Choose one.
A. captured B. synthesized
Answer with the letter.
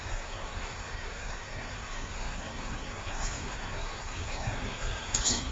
B